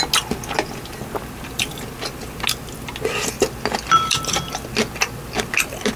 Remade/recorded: recorded